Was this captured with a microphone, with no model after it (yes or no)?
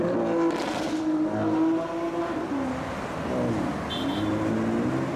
yes